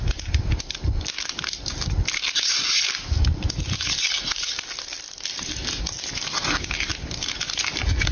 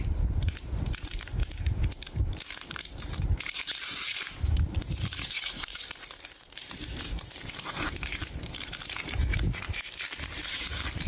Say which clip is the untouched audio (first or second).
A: first